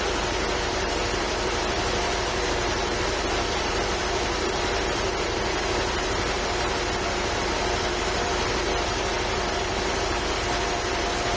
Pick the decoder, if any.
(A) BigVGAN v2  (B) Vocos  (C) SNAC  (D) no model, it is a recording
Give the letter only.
A